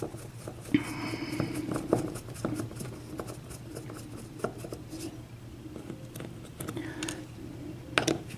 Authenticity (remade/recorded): recorded